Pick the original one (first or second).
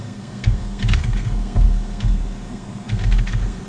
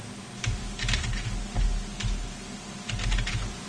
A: second